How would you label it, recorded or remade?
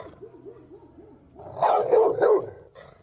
recorded